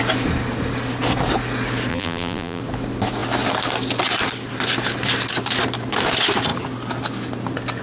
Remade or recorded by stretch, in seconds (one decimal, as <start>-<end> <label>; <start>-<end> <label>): 0.0-1.9 recorded; 1.9-2.6 remade; 2.6-7.8 recorded